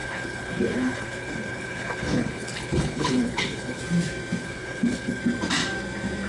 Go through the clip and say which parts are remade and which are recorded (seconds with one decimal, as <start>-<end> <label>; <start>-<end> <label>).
0.0-3.8 remade; 3.8-4.4 recorded; 4.4-5.2 remade; 5.2-6.3 recorded